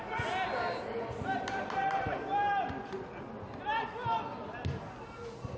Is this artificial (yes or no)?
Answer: no